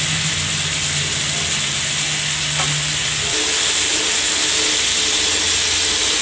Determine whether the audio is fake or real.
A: real